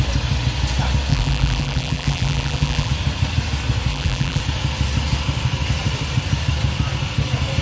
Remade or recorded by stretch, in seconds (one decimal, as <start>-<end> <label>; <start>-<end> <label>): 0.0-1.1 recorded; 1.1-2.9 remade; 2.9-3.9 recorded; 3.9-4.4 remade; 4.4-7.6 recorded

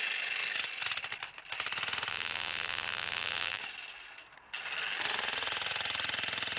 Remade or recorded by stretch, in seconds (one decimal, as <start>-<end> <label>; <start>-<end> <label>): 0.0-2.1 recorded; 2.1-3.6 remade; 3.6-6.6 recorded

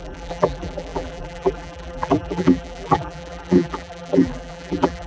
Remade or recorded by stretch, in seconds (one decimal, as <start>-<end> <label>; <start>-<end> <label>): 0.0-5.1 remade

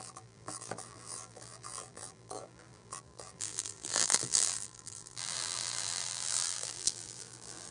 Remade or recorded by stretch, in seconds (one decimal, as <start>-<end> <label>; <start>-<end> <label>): 0.0-7.7 remade